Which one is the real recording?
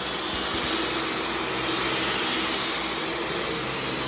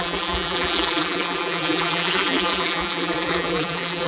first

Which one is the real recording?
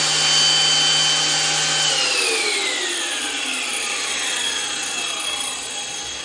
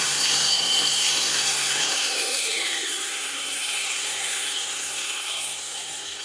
first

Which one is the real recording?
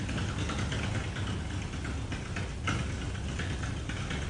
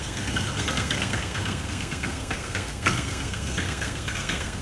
first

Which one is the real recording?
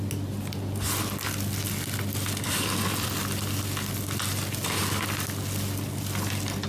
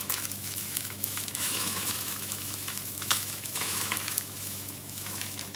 first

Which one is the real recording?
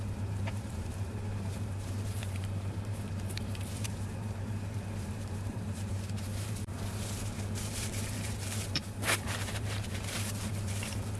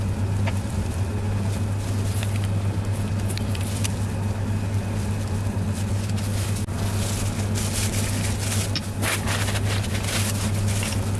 second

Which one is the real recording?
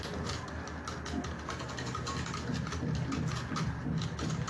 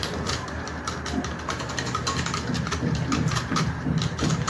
first